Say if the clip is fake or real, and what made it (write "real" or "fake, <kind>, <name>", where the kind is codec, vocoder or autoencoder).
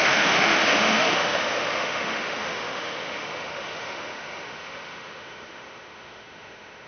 fake, autoencoder, DAC-VAE